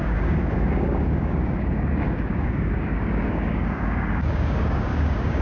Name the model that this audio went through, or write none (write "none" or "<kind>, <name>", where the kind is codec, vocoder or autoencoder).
codec, DAC